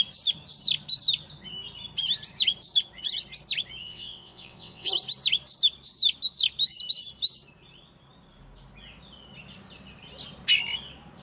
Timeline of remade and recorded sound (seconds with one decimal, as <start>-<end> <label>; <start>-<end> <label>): 0.0-3.8 recorded; 3.8-4.9 remade; 4.9-11.2 recorded